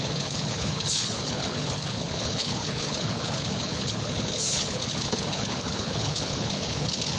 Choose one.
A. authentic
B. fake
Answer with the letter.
B